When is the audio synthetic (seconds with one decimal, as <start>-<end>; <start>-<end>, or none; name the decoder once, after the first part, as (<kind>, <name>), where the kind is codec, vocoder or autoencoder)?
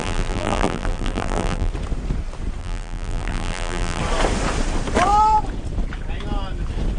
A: 0.0-1.7 (vocoder, BigVGAN v2); 2.6-4.0